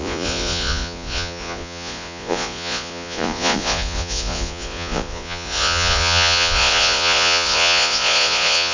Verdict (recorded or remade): remade